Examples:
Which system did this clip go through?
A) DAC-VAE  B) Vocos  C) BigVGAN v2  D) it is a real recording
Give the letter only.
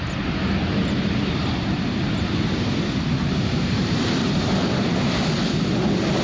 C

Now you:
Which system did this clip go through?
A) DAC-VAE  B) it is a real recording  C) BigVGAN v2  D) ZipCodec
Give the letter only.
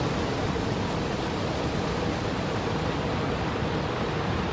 B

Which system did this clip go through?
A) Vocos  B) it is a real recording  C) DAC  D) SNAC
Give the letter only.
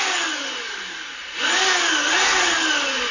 B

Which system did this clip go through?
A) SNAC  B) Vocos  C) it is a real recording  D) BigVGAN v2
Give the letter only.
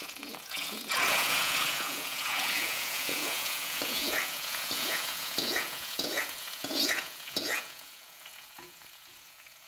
B